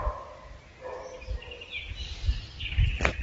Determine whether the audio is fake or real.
real